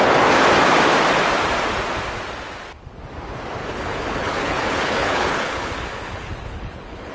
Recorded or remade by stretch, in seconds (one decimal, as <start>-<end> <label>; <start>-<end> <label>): 0.0-3.6 recorded; 3.6-7.1 remade